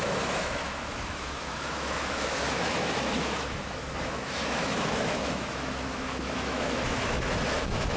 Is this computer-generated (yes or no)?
yes